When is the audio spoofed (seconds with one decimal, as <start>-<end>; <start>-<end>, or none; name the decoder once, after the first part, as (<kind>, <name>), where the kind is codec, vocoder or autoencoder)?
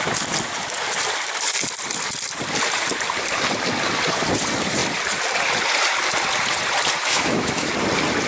7.0-7.7 (autoencoder, DAC-VAE)